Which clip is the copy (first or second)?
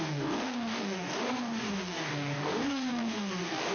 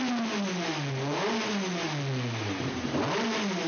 first